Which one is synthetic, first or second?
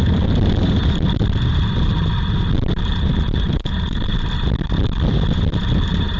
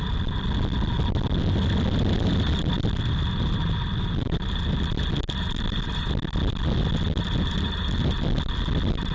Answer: first